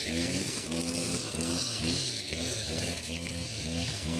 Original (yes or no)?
no